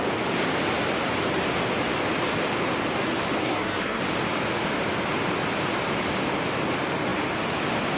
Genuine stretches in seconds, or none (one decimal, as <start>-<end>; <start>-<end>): 0.0-3.4; 4.0-8.0

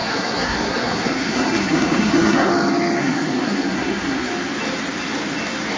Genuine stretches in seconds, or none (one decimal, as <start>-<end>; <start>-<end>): 2.5-3.0; 4.3-5.8

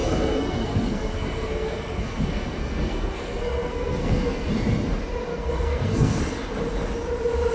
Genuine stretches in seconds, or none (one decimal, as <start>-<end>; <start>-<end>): 4.5-5.3; 6.2-7.5

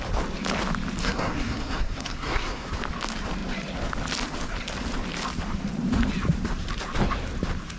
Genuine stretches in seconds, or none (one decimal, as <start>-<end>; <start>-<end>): 0.0-1.0; 2.7-7.8

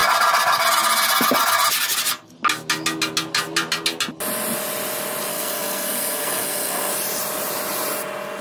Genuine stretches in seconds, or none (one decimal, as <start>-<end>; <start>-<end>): 0.0-5.3; 6.9-8.4